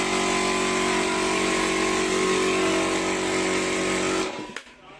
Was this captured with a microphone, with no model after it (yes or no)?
yes